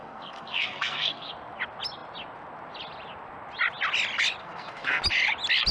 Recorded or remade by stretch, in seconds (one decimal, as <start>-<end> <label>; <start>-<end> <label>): 0.0-1.3 remade; 1.3-4.4 recorded; 4.4-5.0 remade; 5.0-5.7 recorded